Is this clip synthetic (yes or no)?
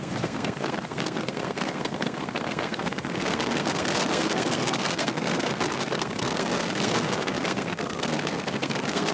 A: yes